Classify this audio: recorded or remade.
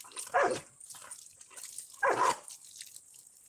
recorded